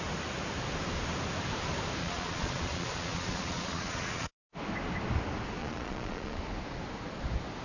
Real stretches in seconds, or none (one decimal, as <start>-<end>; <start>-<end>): 0.0-2.0; 4.5-5.6; 6.4-7.6